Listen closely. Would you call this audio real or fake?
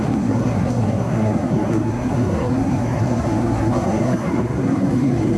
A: fake